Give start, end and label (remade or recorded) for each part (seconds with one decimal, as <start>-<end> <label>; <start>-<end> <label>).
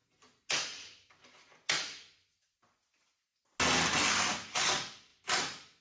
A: 0.0-5.8 recorded